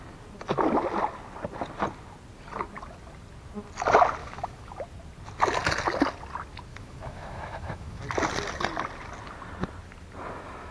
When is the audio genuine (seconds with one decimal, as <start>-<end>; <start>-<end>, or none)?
0.0-4.2; 4.7-6.7; 8.0-10.7